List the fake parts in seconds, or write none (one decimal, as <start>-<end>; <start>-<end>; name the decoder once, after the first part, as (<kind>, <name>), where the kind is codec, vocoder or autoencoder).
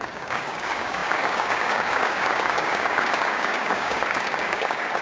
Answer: 0.0-5.0 (codec, DAC)